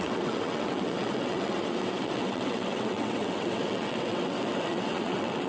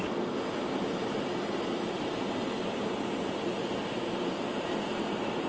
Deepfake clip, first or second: first